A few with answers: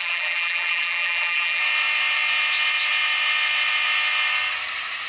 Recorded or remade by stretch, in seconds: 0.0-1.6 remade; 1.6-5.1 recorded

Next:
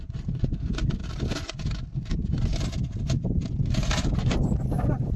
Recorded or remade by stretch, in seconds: 0.0-1.0 recorded; 1.0-1.6 remade; 1.6-2.5 recorded; 2.5-3.6 remade; 3.6-5.2 recorded